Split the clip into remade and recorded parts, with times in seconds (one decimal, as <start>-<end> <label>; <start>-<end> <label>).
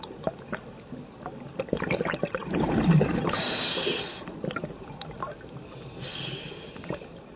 0.0-7.4 recorded